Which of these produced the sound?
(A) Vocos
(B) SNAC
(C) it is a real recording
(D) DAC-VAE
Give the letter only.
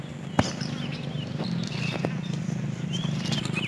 C